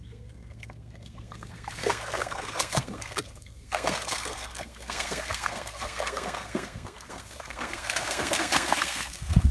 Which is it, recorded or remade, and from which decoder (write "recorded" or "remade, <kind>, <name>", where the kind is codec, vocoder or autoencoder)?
remade, codec, SNAC